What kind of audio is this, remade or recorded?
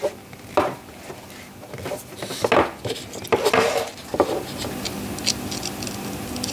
recorded